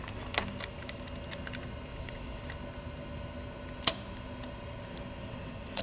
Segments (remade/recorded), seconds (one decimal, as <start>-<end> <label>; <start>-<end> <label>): 0.0-1.9 recorded; 1.9-2.4 remade; 2.4-5.2 recorded; 5.2-5.8 remade